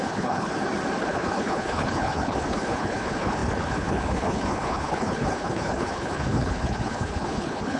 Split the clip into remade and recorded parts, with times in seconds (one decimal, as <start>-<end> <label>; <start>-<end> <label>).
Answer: 0.0-0.5 remade; 0.5-1.0 recorded; 1.0-7.8 remade